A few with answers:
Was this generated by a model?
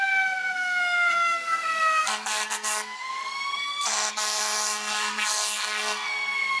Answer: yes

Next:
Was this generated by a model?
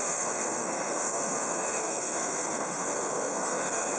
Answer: yes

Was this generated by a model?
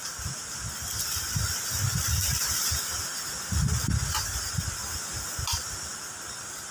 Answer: no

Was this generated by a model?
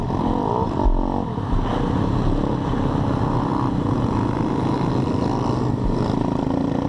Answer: no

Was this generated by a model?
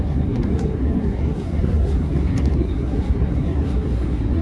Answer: yes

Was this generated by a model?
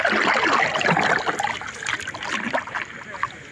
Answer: no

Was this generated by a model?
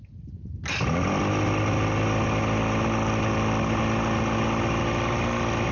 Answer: no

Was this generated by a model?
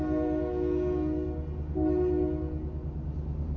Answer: no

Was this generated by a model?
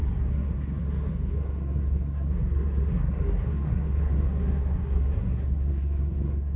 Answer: yes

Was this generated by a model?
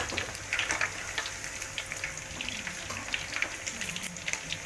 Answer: no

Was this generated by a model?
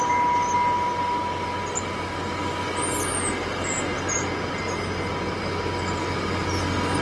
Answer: no